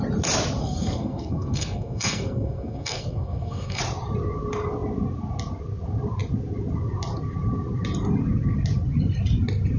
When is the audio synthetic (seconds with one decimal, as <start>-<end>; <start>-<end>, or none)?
0.6-3.8